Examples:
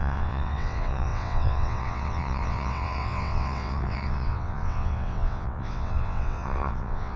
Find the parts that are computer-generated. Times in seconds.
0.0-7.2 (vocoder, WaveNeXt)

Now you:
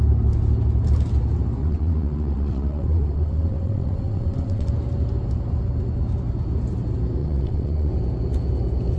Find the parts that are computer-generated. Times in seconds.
1.6-4.7 (vocoder, WaveNeXt); 7.2-7.9

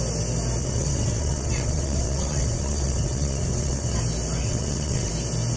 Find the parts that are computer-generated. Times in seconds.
0.6-4.0 (vocoder, WaveNeXt); 4.4-5.1

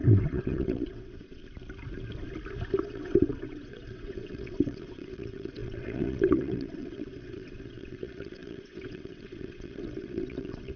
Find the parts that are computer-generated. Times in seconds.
0.0-1.4 (vocoder, WaveNeXt); 2.8-10.8

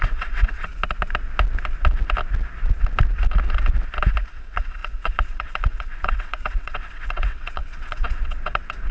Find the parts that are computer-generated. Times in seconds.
0.0-0.7 (vocoder, WaveNeXt); 4.3-8.9

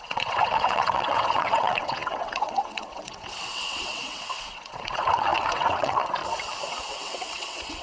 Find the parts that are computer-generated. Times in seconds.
0.0-6.2 (vocoder, WaveNeXt); 6.9-7.8

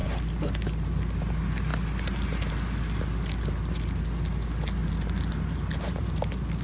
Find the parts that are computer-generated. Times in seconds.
none